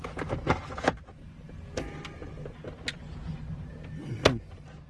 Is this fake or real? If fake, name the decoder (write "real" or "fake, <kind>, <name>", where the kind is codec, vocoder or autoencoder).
real